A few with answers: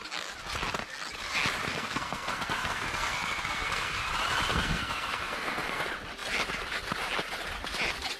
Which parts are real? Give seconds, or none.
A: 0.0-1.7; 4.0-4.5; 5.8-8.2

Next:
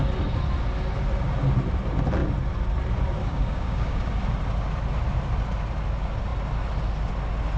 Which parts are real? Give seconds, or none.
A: 0.0-3.2; 4.1-7.6

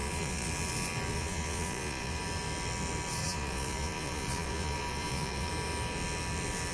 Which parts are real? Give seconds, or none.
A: 0.5-1.1; 2.2-3.2; 5.5-6.7

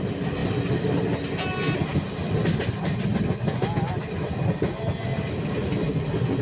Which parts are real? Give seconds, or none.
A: 0.0-6.4

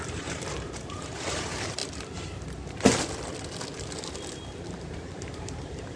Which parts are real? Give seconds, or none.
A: 1.8-4.7

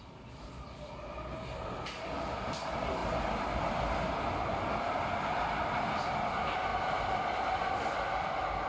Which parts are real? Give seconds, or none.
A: 0.0-8.7